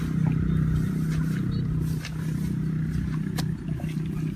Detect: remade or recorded recorded